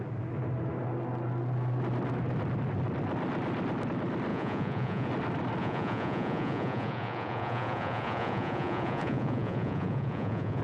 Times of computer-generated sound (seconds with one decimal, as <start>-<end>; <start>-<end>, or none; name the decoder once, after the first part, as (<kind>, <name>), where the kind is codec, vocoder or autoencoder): 4.3-5.1 (vocoder, Vocos); 5.6-10.6